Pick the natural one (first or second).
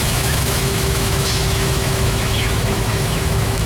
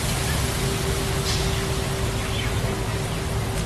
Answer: second